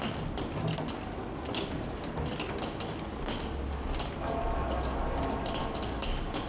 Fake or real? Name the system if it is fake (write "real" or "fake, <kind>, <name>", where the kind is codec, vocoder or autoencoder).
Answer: real